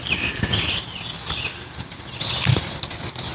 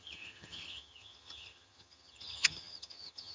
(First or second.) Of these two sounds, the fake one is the second